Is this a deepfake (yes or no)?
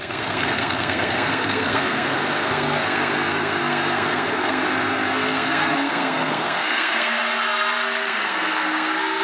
yes